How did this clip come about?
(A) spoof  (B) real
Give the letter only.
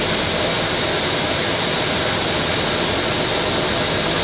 B